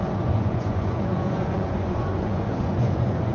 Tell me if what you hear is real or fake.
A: fake